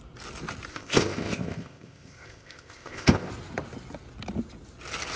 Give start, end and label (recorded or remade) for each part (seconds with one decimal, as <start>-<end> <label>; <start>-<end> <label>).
0.0-0.7 recorded; 0.7-3.3 remade; 3.3-5.2 recorded